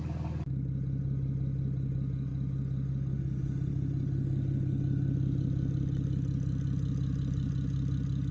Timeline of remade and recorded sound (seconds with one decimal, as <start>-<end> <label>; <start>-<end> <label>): 0.0-8.3 recorded